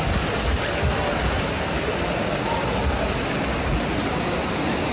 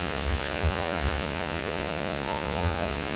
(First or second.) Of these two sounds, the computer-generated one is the second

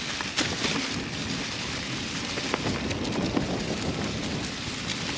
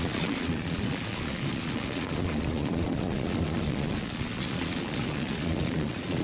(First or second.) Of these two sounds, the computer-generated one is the second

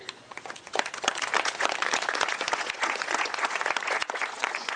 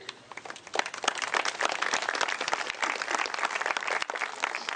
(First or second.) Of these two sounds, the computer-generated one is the first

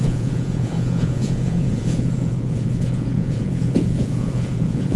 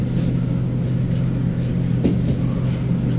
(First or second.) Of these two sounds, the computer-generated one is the first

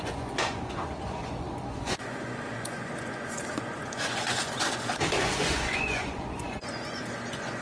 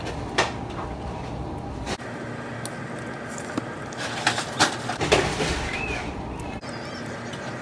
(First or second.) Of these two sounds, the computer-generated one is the first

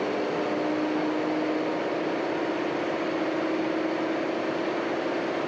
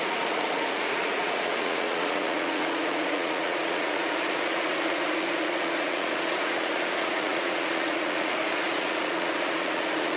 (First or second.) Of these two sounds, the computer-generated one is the second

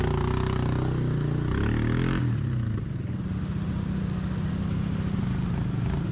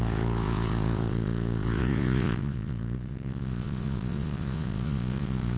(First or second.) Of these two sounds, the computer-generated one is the second